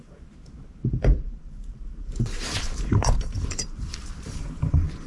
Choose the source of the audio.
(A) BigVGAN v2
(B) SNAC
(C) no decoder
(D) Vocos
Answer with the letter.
A